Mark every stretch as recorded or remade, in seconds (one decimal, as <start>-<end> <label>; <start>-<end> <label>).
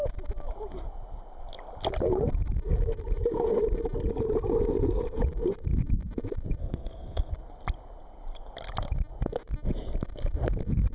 0.0-6.6 recorded; 6.6-7.3 remade; 7.3-10.9 recorded